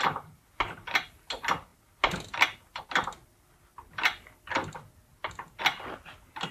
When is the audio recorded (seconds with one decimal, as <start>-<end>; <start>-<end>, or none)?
0.0-6.5